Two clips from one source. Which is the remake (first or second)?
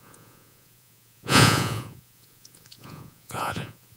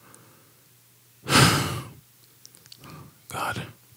first